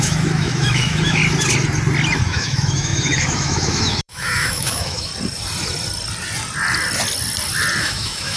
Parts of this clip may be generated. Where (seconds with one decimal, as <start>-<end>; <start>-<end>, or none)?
0.0-1.2; 2.2-5.1; 7.8-8.4